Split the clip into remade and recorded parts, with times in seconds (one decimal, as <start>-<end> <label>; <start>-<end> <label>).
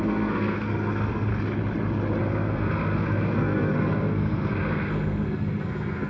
0.0-1.3 remade; 1.3-2.2 recorded; 2.2-6.1 remade